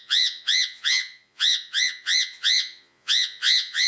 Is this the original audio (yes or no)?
no